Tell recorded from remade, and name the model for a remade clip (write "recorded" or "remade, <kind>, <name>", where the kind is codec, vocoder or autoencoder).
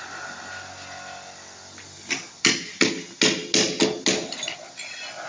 recorded